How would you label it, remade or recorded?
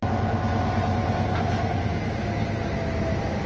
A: recorded